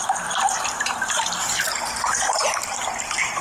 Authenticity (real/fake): real